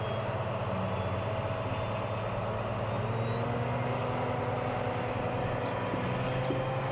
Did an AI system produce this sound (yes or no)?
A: no